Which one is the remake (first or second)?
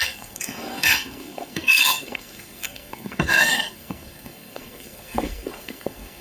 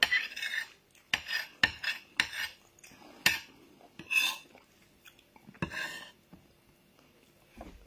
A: first